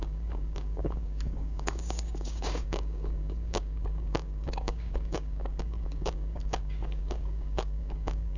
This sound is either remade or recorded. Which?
remade